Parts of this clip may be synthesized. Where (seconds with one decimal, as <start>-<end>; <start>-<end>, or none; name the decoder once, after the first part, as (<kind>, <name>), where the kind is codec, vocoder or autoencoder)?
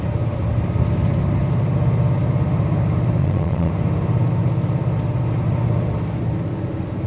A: 3.2-3.7 (vocoder, Vocos)